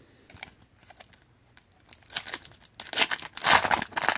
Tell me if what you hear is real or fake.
real